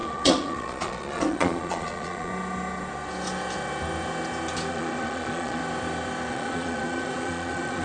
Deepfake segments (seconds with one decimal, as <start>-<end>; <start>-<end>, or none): 0.0-2.3; 4.7-5.6; 6.3-7.8